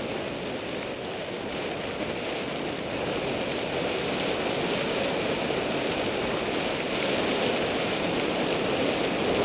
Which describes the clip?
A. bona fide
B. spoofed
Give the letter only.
A